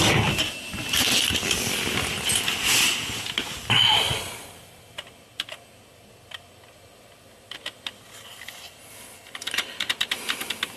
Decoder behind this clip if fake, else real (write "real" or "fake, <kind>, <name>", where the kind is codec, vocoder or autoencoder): real